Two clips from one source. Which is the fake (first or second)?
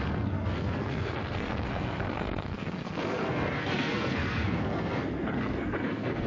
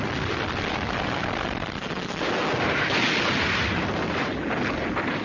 first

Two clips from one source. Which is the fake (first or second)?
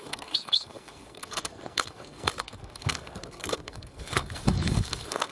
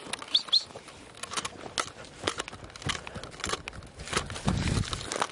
first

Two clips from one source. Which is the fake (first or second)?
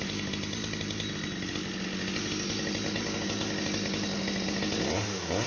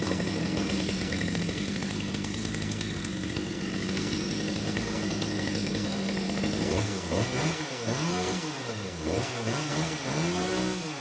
second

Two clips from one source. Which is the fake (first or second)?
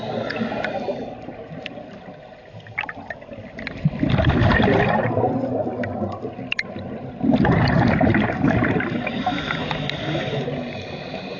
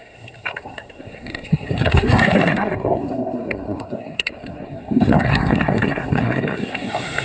second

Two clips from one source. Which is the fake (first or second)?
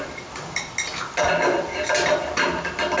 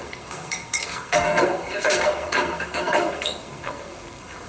second